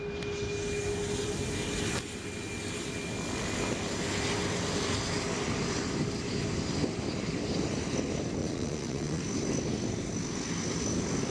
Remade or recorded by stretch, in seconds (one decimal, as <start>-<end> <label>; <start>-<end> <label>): 0.0-8.4 recorded; 8.4-9.2 remade; 9.2-11.3 recorded